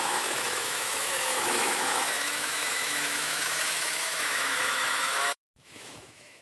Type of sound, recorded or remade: remade